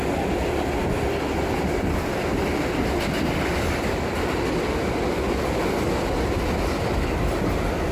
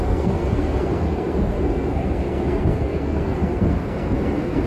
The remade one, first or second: second